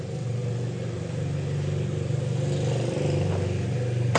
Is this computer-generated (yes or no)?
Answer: no